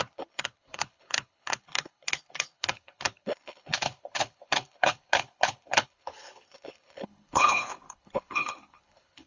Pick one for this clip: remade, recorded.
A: remade